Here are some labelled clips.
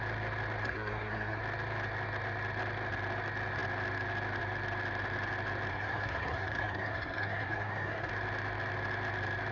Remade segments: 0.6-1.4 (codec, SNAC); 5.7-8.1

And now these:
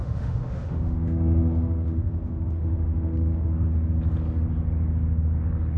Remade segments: 0.0-3.5 (autoencoder, DAC-VAE)